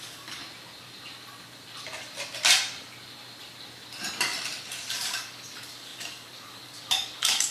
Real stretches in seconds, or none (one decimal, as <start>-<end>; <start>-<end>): 0.4-4.9